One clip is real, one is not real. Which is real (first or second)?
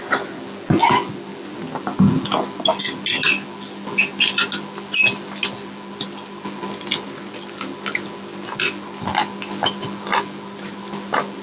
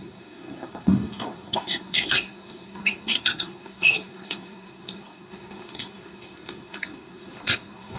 first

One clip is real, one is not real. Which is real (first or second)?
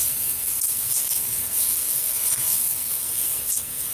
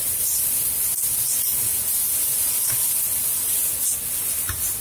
second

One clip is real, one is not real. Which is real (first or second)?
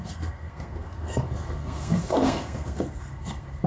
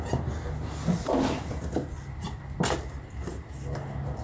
second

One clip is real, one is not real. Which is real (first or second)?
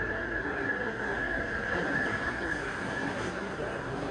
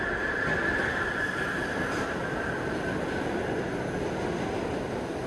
second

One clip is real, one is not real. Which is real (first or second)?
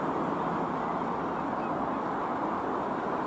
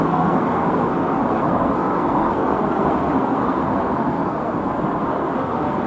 first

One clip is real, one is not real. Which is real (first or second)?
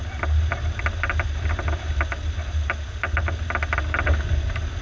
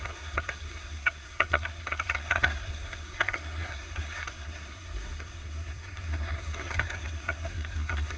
first